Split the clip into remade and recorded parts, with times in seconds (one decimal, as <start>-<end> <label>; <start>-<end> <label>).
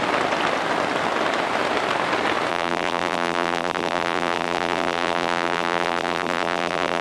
0.0-2.5 recorded; 2.5-7.0 remade